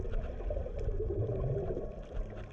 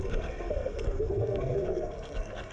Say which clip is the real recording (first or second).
first